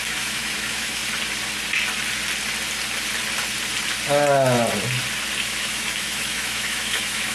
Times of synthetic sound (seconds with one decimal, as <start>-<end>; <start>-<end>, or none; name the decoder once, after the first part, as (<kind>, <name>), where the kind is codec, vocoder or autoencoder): 0.0-1.0 (autoencoder, DAC-VAE); 5.4-7.3